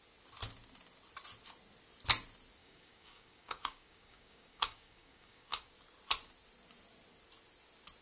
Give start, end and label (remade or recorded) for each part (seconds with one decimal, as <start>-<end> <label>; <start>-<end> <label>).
0.0-2.6 recorded; 2.6-5.7 remade; 5.7-8.0 recorded